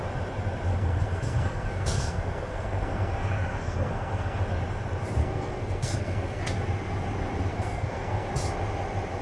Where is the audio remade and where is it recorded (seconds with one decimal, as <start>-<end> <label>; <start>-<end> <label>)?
0.0-0.7 recorded; 0.7-4.4 remade; 4.4-5.2 recorded; 5.2-6.4 remade; 6.4-7.5 recorded; 7.5-8.3 remade; 8.3-9.2 recorded